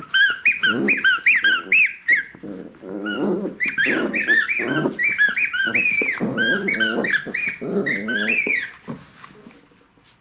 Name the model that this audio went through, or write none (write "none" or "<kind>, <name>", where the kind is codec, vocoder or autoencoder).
none